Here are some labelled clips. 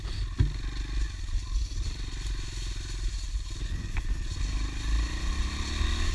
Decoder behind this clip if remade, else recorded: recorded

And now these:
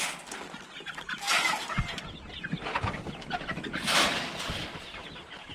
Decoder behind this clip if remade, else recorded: recorded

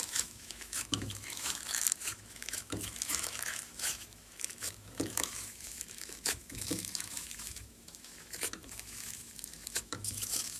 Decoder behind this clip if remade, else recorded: remade, autoencoder, DAC-VAE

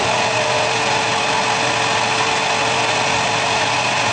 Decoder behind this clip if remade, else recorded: recorded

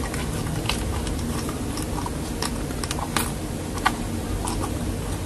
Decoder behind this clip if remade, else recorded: recorded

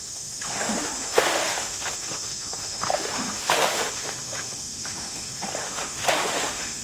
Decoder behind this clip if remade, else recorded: remade, autoencoder, DAC-VAE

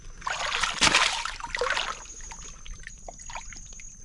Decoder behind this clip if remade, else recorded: recorded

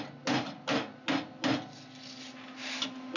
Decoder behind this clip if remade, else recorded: recorded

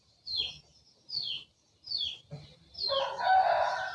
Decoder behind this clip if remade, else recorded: recorded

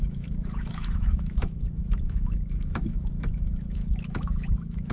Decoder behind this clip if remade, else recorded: remade, autoencoder, DAC-VAE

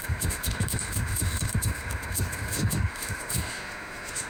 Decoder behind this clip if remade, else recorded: remade, autoencoder, DAC-VAE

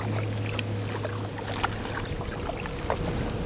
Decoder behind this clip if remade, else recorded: recorded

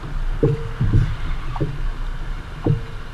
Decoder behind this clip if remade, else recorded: recorded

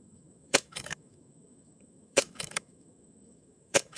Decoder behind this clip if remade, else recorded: remade, autoencoder, DAC-VAE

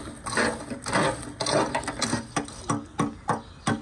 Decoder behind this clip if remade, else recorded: recorded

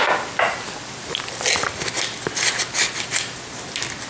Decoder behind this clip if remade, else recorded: recorded